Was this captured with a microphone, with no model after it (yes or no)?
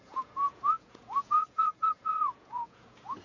no